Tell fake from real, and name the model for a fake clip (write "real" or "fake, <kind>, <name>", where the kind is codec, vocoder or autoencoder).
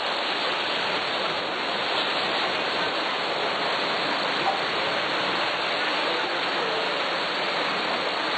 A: real